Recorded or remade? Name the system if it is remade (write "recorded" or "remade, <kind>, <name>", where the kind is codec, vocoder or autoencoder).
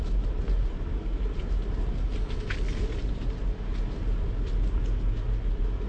recorded